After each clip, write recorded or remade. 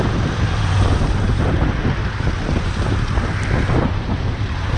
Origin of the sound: remade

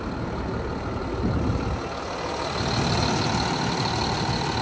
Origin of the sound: recorded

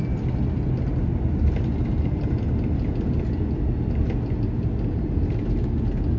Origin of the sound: recorded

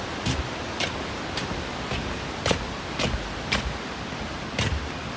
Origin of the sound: recorded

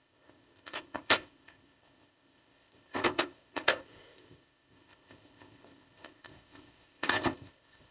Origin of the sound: remade